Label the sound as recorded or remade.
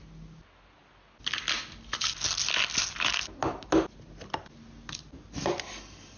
recorded